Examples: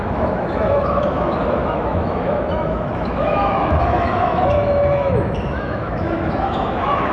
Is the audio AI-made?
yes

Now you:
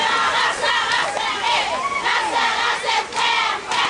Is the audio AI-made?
no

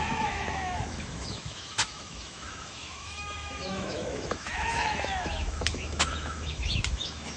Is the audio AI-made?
yes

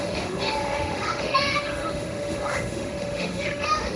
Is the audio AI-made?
yes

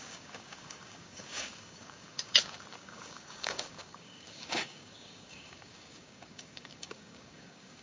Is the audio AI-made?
yes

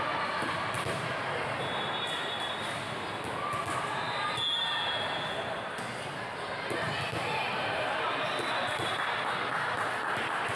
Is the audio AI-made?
no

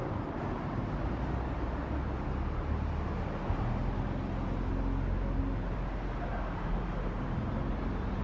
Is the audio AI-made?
no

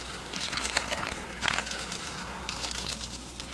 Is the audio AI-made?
yes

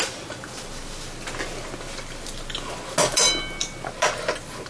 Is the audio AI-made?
no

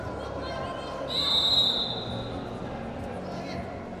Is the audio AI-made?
no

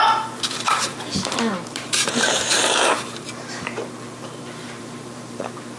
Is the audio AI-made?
yes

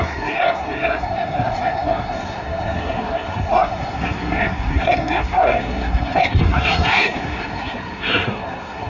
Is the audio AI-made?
yes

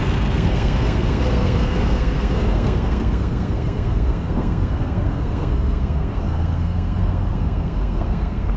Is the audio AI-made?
yes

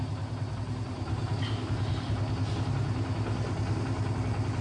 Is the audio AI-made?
no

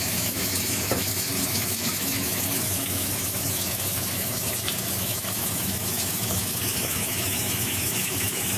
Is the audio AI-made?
yes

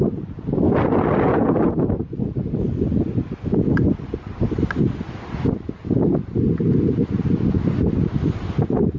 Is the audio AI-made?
no